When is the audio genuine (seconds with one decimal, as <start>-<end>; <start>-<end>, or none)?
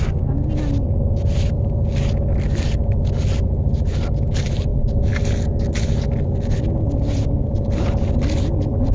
0.0-8.9